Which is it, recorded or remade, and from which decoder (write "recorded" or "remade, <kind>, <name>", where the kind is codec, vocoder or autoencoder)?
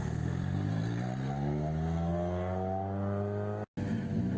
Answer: recorded